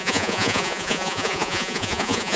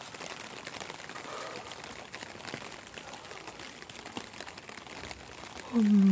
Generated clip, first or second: first